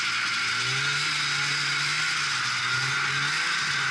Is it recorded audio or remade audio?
recorded